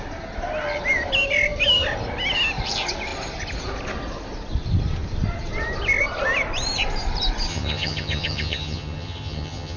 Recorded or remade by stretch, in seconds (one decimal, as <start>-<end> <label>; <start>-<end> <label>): 0.0-7.5 recorded; 7.5-9.8 remade